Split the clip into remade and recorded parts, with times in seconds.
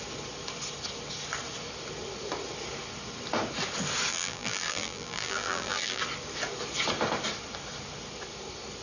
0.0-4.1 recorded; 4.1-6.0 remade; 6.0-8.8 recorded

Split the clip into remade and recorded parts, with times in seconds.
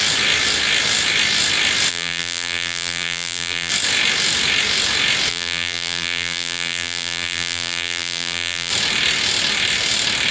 0.0-1.9 recorded; 1.9-3.7 remade; 3.7-5.3 recorded; 5.3-8.7 remade; 8.7-10.3 recorded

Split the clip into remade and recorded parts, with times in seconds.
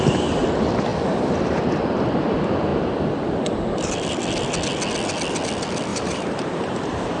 0.0-5.9 recorded; 5.9-7.2 remade